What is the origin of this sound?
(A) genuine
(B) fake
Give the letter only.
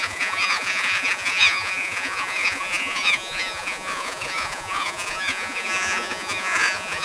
B